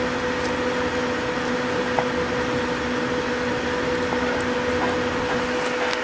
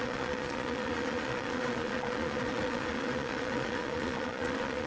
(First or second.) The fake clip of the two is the second